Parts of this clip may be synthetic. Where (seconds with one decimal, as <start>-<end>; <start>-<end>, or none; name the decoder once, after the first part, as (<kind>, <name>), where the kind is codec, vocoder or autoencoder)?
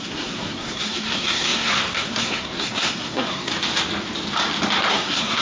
0.0-3.5 (codec, SNAC); 4.9-5.4